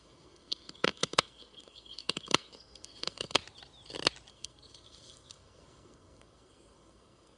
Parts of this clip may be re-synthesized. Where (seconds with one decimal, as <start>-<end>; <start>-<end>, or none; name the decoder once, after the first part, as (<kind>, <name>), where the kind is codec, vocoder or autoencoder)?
0.0-3.4 (codec, SNAC); 4.3-7.4

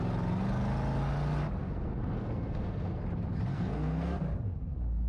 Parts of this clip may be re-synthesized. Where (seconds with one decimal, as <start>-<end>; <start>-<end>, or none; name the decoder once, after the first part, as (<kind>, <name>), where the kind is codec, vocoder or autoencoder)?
1.6-3.0 (codec, SNAC); 3.5-4.2

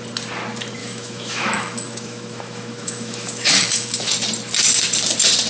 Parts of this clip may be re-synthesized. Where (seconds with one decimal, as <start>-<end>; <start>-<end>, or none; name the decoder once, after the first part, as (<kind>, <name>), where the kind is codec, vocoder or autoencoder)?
0.8-4.1 (autoencoder, DAC-VAE)